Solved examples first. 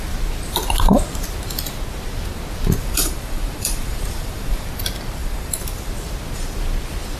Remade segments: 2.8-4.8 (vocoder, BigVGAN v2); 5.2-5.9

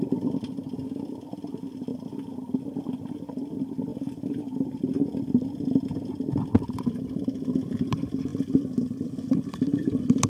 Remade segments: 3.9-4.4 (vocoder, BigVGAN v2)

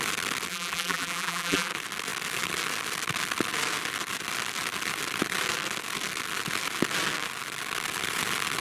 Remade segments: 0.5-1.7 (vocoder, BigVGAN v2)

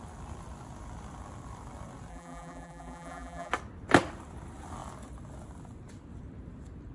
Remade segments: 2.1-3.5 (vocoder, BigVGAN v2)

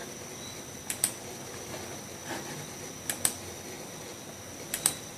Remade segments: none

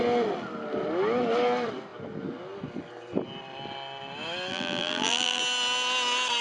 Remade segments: 4.5-5.4 (vocoder, BigVGAN v2)

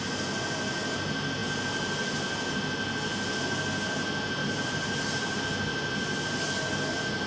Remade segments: 4.4-5.4 (vocoder, BigVGAN v2)